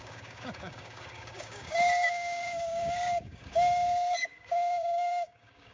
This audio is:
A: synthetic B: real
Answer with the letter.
A